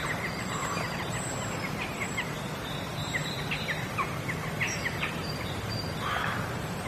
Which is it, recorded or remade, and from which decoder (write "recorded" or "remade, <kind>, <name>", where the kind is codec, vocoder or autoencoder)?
remade, vocoder, BigVGAN v2